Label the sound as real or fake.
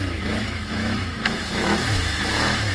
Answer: fake